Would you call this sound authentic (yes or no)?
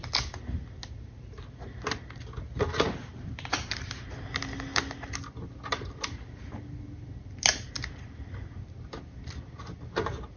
yes